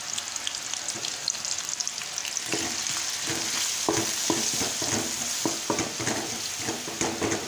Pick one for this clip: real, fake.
real